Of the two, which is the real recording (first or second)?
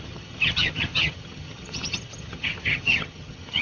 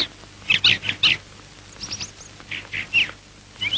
second